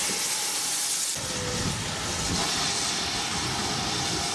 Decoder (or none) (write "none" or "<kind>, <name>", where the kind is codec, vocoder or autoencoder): none